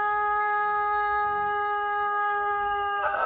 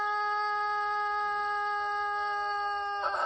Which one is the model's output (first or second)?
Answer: first